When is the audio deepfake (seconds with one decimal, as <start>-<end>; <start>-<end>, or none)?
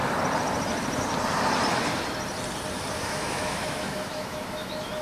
3.0-5.0